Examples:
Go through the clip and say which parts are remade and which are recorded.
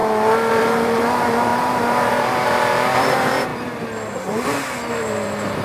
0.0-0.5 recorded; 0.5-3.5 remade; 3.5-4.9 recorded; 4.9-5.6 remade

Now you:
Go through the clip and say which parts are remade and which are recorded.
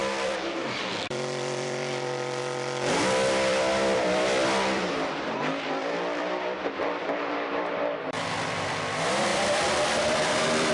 0.0-10.7 remade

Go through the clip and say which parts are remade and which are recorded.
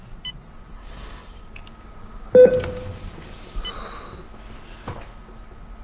0.0-5.8 recorded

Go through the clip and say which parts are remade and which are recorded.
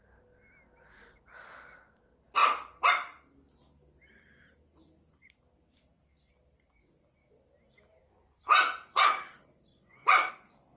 0.0-8.0 recorded; 8.0-9.2 remade; 9.2-9.7 recorded; 9.7-10.3 remade; 10.3-10.8 recorded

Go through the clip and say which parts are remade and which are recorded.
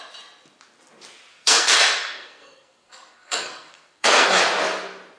0.0-1.3 recorded; 1.3-4.4 remade; 4.4-5.2 recorded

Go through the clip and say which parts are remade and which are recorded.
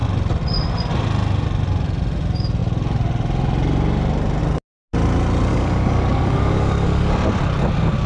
0.0-5.5 recorded; 5.5-7.1 remade; 7.1-8.1 recorded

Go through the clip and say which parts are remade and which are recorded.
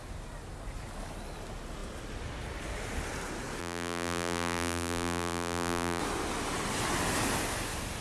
0.0-3.6 recorded; 3.6-6.0 remade; 6.0-8.0 recorded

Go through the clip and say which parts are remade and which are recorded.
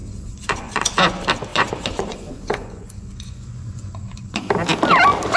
0.0-0.9 remade; 0.9-1.5 recorded; 1.5-4.5 remade; 4.5-5.4 recorded